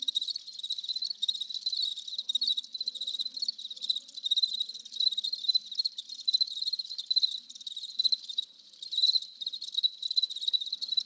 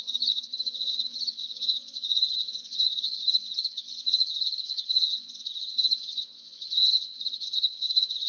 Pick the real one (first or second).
first